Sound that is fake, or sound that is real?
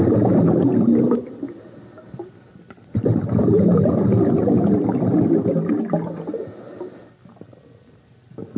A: real